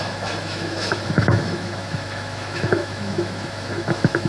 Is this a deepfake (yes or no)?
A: yes